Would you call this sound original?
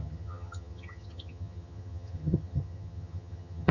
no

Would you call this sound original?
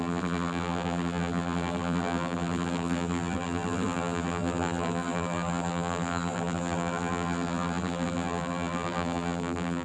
no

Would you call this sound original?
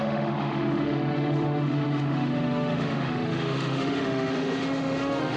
no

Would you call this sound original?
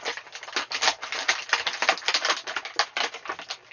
yes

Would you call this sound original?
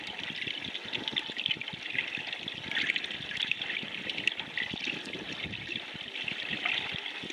yes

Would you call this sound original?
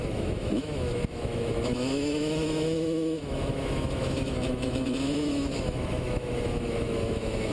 no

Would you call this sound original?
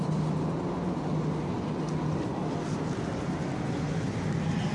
yes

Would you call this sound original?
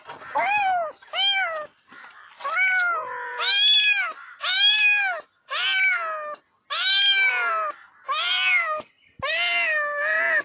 yes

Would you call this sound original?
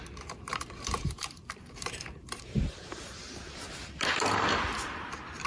no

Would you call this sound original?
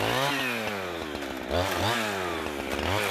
yes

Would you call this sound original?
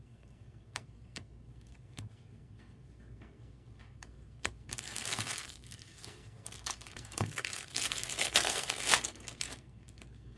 no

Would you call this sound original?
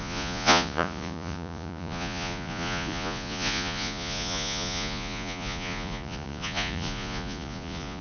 no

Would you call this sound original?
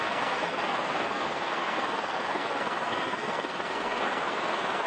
no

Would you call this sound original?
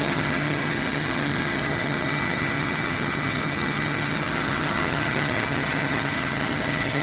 no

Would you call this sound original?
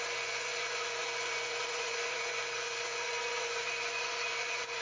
no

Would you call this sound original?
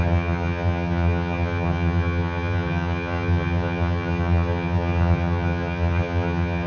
no